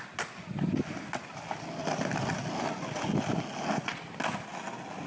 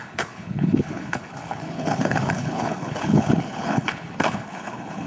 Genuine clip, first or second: first